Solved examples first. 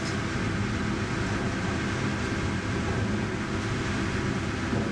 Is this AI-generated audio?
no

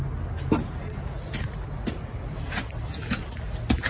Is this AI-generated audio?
no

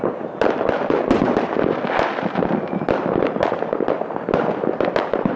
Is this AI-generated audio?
no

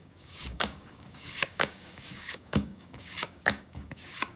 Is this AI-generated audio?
yes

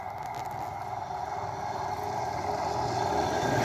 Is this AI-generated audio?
no